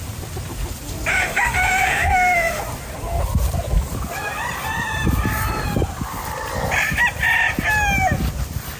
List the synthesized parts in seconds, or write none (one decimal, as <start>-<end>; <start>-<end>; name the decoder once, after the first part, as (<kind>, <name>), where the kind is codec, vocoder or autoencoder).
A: 1.1-2.6 (autoencoder, DAC-VAE)